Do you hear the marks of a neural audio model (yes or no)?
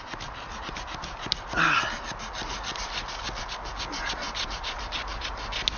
no